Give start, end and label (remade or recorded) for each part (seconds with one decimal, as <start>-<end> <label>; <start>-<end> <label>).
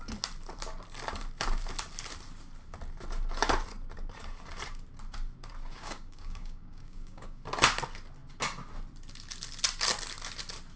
0.0-5.7 recorded; 5.7-7.4 remade; 7.4-10.8 recorded